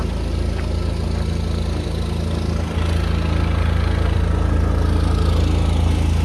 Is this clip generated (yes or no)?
no